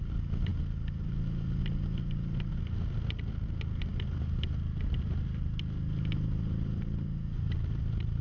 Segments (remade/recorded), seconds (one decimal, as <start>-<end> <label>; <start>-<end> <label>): 0.0-8.2 recorded